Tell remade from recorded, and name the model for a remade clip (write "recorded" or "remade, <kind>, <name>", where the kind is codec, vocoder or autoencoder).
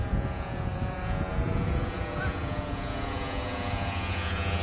remade, vocoder, Vocos